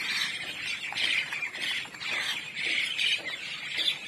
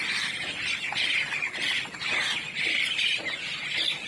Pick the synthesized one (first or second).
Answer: first